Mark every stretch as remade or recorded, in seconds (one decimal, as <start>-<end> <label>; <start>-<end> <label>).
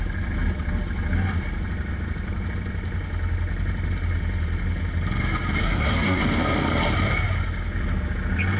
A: 0.0-5.6 recorded; 5.6-6.2 remade; 6.2-8.6 recorded